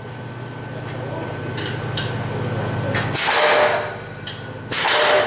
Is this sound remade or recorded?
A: recorded